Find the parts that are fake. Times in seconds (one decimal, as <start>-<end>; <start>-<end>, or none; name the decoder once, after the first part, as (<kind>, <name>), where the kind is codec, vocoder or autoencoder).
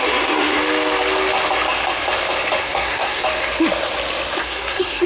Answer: 0.0-0.6 (codec, SNAC); 2.6-3.2; 4.4-5.1